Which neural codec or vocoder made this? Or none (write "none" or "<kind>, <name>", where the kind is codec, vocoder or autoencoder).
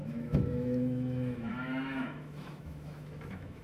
autoencoder, DAC-VAE